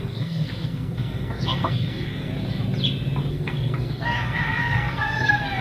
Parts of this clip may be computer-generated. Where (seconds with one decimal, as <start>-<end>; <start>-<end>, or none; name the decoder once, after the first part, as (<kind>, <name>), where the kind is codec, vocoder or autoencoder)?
0.0-2.3 (codec, SNAC); 3.3-5.6